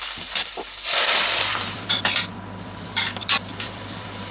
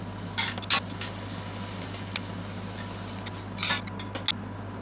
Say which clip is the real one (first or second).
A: second